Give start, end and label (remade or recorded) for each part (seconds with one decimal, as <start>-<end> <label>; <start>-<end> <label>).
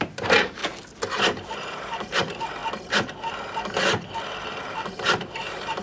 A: 0.0-0.6 remade; 0.6-1.5 recorded; 1.5-2.6 remade; 2.6-4.6 recorded; 4.6-5.8 remade